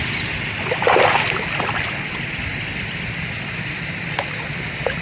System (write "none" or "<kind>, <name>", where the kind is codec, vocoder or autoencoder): none